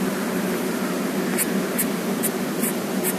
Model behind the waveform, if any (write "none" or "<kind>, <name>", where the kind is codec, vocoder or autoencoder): none